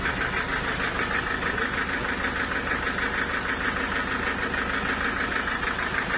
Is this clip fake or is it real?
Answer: real